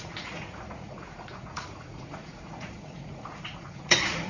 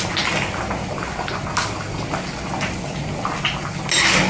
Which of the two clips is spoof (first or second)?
first